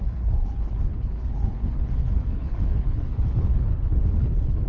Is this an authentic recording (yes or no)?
no